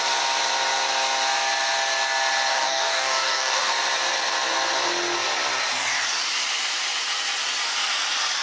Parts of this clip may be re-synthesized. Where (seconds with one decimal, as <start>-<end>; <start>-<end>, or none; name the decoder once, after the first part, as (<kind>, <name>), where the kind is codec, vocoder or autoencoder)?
2.5-3.7 (codec, DAC)